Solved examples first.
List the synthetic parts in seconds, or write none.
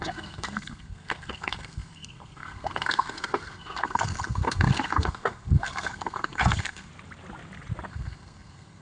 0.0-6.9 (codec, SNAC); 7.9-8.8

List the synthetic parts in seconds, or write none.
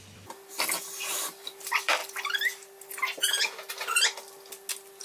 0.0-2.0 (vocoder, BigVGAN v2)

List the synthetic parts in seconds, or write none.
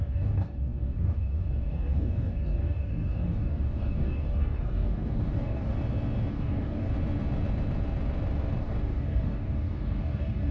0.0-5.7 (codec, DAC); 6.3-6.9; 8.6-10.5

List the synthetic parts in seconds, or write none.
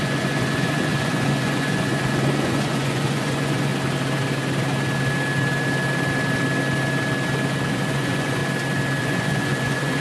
0.0-3.7 (vocoder, Vocos); 7.7-8.4; 9.0-10.0